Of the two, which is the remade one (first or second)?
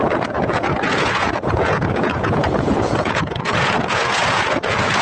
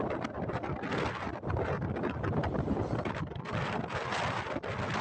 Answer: first